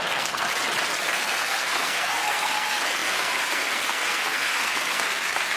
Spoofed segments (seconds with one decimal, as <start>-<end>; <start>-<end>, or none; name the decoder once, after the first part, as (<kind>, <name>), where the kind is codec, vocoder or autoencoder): 0.0-0.5 (codec, SNAC); 1.0-5.6